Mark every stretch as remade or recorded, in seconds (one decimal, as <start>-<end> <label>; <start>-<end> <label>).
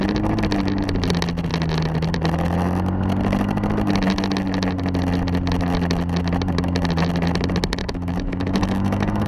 0.0-7.8 recorded; 7.8-9.3 remade